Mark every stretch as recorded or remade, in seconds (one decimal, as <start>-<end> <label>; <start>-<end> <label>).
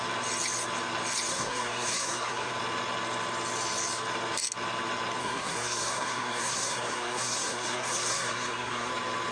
0.0-1.3 recorded; 1.3-2.5 remade; 2.5-5.2 recorded; 5.2-8.9 remade; 8.9-9.3 recorded